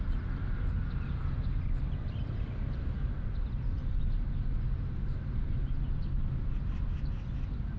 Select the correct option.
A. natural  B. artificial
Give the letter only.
A